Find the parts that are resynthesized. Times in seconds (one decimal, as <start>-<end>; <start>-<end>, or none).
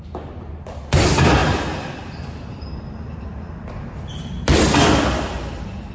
none